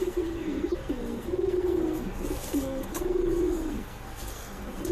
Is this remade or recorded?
remade